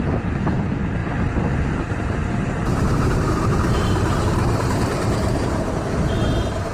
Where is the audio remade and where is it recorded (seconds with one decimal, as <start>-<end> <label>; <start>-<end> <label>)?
0.0-1.0 remade; 1.0-1.8 recorded; 1.8-6.7 remade